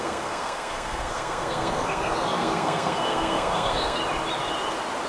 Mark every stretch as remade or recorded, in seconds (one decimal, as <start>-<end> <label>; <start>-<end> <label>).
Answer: 0.0-4.0 remade; 4.0-5.1 recorded